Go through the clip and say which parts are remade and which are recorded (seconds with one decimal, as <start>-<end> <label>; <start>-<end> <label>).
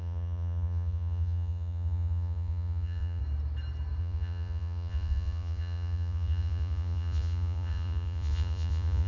0.0-3.2 remade; 3.2-4.0 recorded; 4.0-9.1 remade